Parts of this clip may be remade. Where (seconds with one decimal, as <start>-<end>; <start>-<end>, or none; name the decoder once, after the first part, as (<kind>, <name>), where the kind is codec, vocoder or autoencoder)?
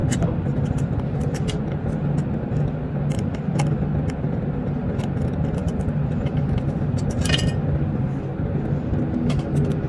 none